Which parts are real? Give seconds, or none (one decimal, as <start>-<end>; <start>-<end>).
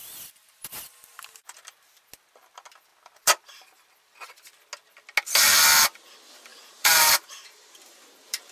0.0-6.5